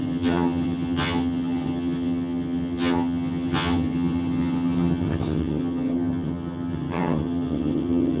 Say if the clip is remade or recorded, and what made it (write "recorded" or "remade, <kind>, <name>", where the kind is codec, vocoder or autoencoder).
remade, vocoder, HiFi-GAN